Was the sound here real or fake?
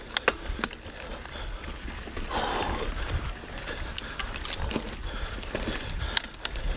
real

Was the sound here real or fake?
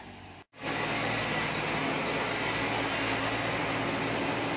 real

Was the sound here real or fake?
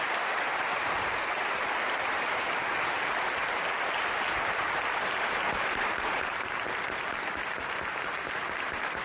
real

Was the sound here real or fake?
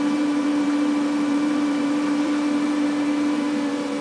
fake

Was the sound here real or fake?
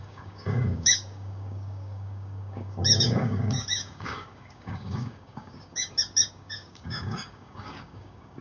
fake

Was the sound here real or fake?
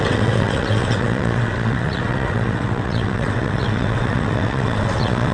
fake